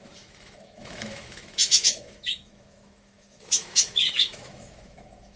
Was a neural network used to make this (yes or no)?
yes